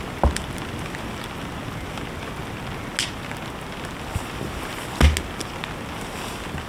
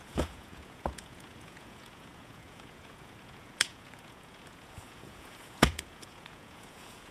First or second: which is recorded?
first